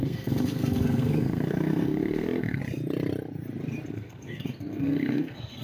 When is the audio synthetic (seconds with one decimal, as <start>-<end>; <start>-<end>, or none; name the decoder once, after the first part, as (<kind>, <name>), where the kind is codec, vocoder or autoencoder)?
0.0-2.6 (codec, SNAC); 3.9-5.6